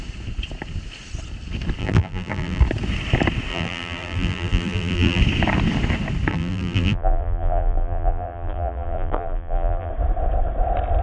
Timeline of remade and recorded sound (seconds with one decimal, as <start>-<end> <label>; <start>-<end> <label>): 0.0-1.8 recorded; 1.8-2.6 remade; 2.6-3.5 recorded; 3.5-5.2 remade; 5.2-6.3 recorded; 6.3-9.9 remade; 9.9-11.0 recorded